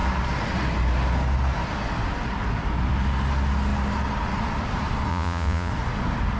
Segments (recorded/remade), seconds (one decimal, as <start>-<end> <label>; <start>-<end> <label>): 0.0-5.1 recorded; 5.1-5.7 remade; 5.7-6.4 recorded